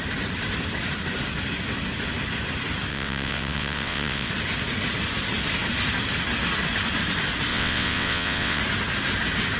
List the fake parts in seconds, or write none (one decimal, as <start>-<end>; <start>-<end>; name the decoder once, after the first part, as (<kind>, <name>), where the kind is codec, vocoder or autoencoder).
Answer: 2.9-4.3 (vocoder, WaveNeXt); 7.5-8.6

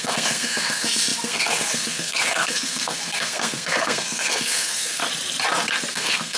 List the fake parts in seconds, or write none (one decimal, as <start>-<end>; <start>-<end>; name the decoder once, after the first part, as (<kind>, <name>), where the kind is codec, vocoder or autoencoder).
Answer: 0.0-5.0 (codec, SNAC); 5.9-6.4

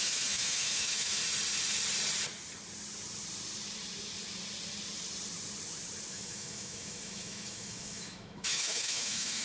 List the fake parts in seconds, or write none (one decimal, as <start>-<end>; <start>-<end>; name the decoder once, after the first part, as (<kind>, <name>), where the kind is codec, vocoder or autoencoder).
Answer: 0.0-1.2 (autoencoder, DAC-VAE); 6.1-9.4

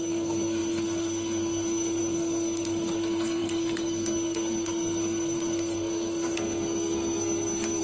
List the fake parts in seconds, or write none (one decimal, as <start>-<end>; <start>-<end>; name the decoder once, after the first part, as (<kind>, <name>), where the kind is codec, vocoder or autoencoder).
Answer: 0.0-7.8 (codec, SNAC)